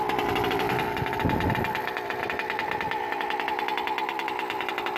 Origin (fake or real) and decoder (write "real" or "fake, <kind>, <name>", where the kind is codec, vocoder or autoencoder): real